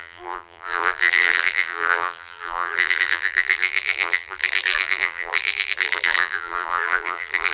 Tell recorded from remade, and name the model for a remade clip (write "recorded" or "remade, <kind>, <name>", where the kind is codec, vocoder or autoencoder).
remade, vocoder, BigVGAN v2